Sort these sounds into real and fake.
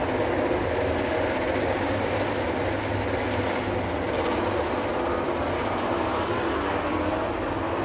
real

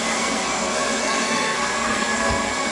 fake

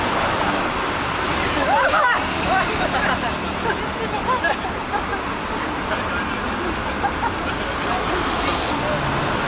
real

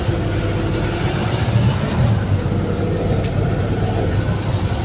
real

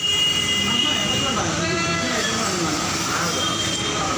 real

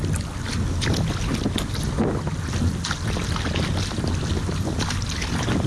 real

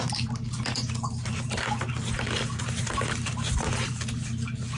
real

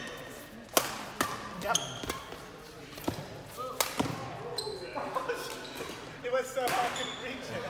real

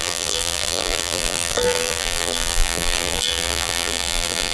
fake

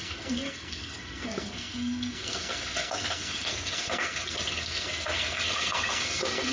fake